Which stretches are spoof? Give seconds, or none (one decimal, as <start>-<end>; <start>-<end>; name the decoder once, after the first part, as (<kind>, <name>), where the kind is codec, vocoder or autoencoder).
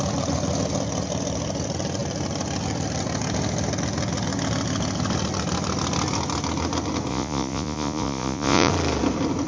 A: 7.1-8.7 (vocoder, Vocos)